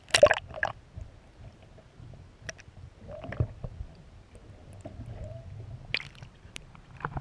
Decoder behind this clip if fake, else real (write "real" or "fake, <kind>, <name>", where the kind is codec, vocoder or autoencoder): real